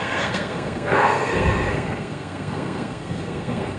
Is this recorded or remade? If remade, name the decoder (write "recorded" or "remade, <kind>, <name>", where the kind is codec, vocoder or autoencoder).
remade, codec, SNAC